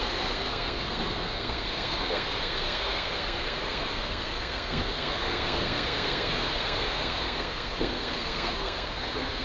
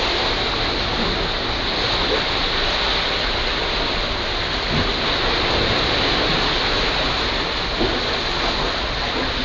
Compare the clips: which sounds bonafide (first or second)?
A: second